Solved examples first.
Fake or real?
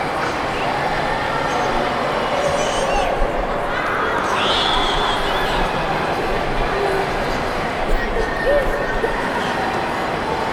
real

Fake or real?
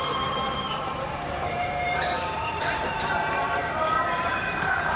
fake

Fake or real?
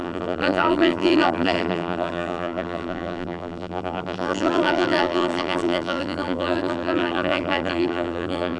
fake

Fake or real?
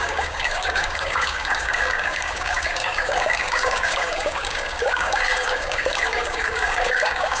fake